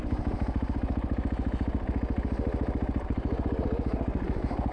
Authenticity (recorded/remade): recorded